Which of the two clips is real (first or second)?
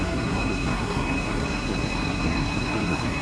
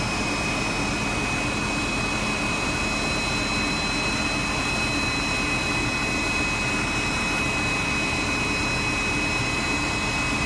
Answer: second